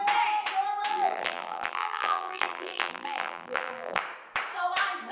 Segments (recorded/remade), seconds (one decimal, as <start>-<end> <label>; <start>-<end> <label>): 0.0-0.9 recorded; 0.9-4.0 remade; 4.0-5.1 recorded